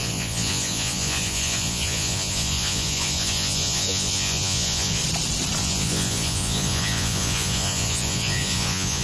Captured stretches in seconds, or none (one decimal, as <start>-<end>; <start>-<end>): 5.0-5.6